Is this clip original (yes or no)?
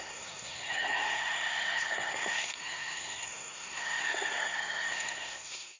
no